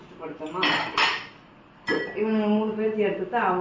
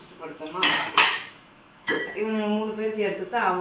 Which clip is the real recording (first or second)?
first